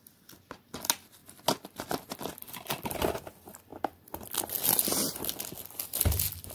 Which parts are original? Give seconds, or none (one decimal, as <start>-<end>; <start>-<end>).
0.0-6.5